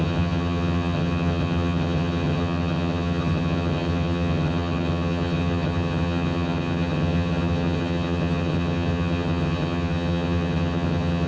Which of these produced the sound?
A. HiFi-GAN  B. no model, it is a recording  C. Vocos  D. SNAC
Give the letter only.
A